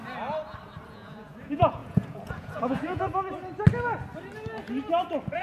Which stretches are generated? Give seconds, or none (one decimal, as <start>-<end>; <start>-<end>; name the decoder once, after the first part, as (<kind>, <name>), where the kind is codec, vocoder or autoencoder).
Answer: 0.9-3.0 (vocoder, Vocos)